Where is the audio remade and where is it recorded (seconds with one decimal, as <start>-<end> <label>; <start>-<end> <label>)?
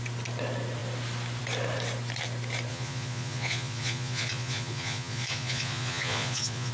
0.0-2.7 recorded; 2.7-6.7 remade